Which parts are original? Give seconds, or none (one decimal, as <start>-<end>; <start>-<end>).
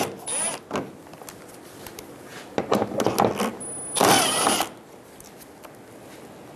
0.0-6.6